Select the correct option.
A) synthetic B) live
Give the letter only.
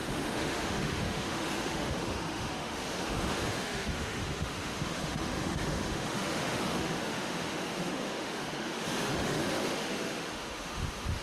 A